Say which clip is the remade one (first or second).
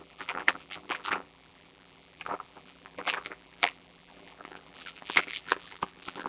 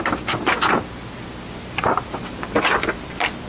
first